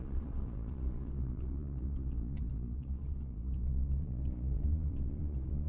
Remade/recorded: remade